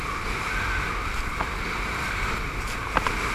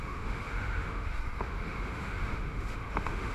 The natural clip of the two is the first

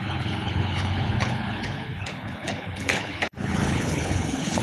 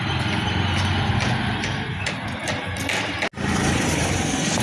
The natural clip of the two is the second